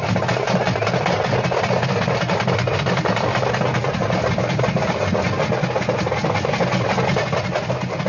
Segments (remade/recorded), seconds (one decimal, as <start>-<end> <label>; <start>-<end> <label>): 0.0-8.1 recorded

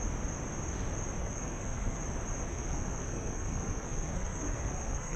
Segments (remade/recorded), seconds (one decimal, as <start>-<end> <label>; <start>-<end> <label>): 0.0-1.2 recorded; 1.2-2.0 remade; 2.0-2.5 recorded; 2.5-5.2 remade

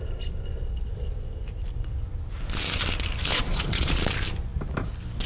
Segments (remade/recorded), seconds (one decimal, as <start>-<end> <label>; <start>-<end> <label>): 0.0-3.3 recorded; 3.3-4.0 remade; 4.0-5.3 recorded

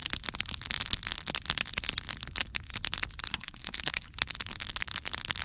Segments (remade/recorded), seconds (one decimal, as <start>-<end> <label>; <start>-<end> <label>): 0.0-3.3 recorded; 3.3-4.1 remade; 4.1-5.4 recorded

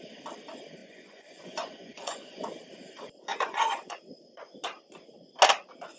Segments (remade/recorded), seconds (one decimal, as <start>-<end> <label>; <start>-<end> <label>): 0.0-0.8 recorded; 0.8-2.6 remade; 2.6-3.3 recorded; 3.3-4.0 remade; 4.0-6.0 recorded

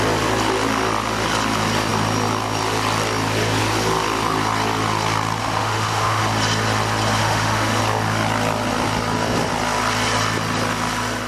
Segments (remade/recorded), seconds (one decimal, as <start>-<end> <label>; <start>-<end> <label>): 0.0-5.4 recorded; 5.4-6.2 remade; 6.2-7.2 recorded; 7.2-7.8 remade; 7.8-11.3 recorded

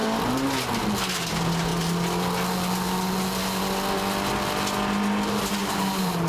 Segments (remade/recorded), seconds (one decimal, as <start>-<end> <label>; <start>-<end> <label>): 0.0-5.6 recorded; 5.6-6.3 remade